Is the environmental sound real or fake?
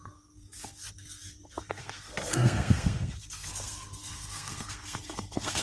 fake